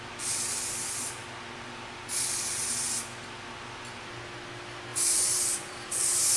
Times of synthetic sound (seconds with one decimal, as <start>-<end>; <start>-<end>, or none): 4.9-6.4